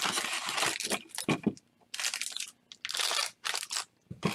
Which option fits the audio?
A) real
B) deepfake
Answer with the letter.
A